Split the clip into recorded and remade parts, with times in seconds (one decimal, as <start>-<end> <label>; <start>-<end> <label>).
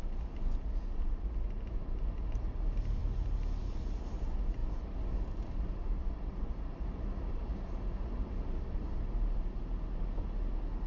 0.0-10.9 recorded